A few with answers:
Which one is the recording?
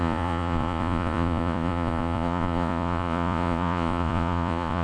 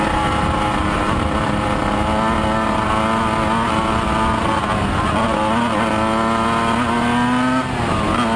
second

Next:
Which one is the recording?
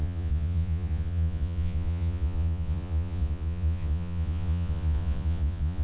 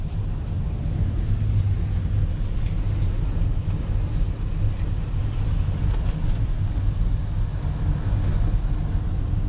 second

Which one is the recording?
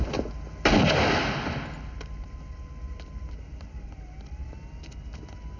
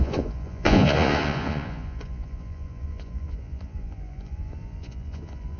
first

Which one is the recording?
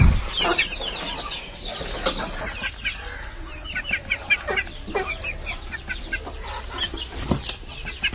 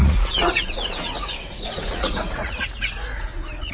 first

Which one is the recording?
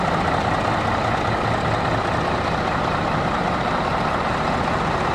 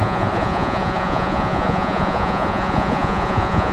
first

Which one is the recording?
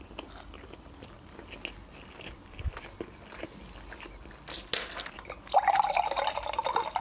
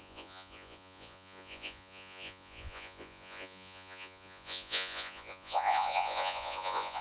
first